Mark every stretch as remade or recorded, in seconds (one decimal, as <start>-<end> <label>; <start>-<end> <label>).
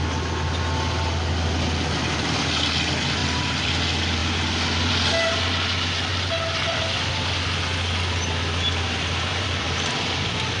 0.0-3.2 recorded; 3.2-3.7 remade; 3.7-6.1 recorded; 6.1-7.1 remade; 7.1-9.3 recorded; 9.3-9.9 remade; 9.9-10.6 recorded